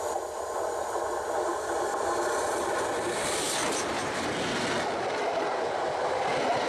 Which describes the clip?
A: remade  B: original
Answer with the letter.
B